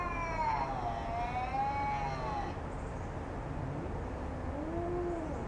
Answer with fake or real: real